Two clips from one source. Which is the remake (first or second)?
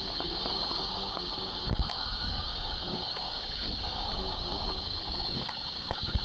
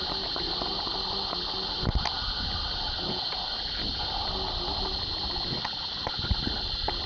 first